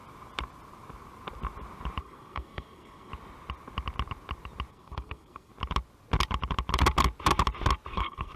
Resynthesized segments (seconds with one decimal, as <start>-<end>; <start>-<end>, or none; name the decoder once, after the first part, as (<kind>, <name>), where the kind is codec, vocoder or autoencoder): 2.0-3.1 (codec, SNAC); 4.7-5.5; 7.9-8.4